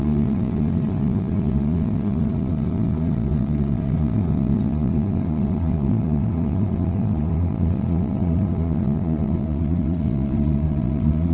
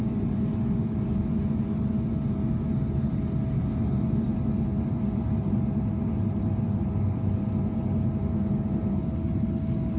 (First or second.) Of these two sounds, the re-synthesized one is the first